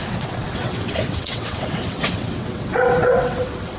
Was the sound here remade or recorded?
remade